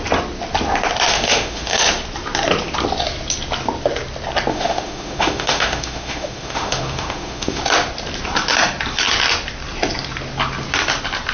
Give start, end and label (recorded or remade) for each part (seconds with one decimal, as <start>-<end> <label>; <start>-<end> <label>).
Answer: 0.0-1.1 recorded; 1.1-1.8 remade; 1.8-4.5 recorded; 4.5-7.6 remade; 7.6-11.3 recorded